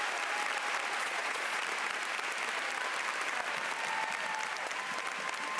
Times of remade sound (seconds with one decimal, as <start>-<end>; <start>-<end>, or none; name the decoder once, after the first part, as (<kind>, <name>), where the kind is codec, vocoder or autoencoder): 1.0-1.6 (vocoder, Vocos)